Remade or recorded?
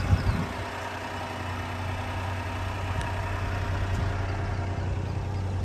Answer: recorded